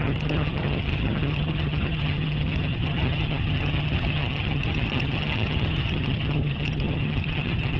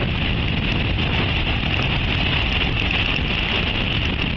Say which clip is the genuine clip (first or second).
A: second